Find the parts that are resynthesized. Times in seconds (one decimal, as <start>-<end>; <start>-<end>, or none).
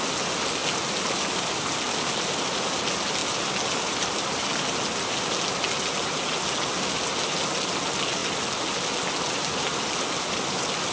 none